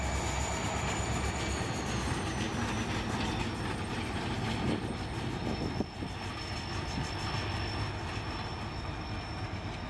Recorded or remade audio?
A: recorded